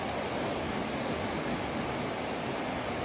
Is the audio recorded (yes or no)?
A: yes